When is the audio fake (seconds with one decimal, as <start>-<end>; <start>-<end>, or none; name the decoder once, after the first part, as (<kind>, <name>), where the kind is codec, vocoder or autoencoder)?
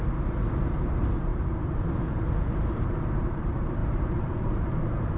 0.7-5.2 (vocoder, BigVGAN v2)